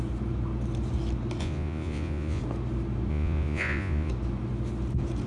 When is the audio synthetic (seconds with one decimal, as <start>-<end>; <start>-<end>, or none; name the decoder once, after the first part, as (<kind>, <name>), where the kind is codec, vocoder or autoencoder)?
1.4-2.4 (vocoder, Vocos); 3.1-4.1